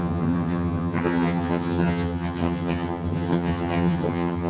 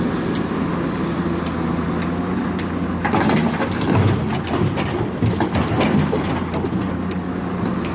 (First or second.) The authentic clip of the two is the second